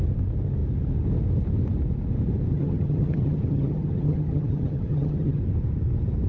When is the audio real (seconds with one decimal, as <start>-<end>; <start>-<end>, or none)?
0.0-2.5; 5.4-6.3